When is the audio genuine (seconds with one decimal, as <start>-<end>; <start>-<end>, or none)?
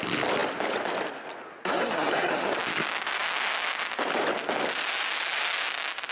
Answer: 0.0-1.6; 2.5-6.1